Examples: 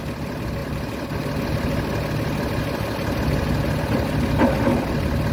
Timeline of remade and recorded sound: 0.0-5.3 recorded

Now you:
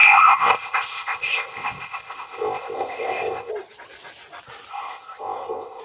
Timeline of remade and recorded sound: 0.0-3.5 remade; 3.5-4.7 recorded; 4.7-5.8 remade

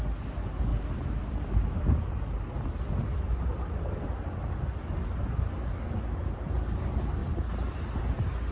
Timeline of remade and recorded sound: 0.0-8.5 recorded

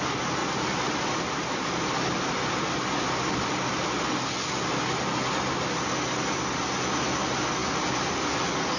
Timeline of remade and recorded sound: 0.0-0.4 recorded; 0.4-1.9 remade; 1.9-8.8 recorded

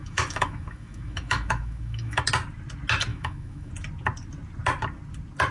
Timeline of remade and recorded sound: 0.0-2.2 remade; 2.2-3.1 recorded; 3.1-3.7 remade; 3.7-5.5 recorded

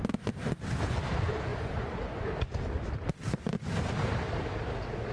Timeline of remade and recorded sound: 0.0-1.5 recorded; 1.5-2.3 remade; 2.3-5.1 recorded